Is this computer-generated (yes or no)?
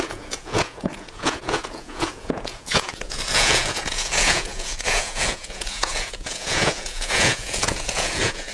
yes